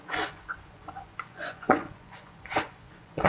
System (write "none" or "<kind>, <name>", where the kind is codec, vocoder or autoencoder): vocoder, Vocos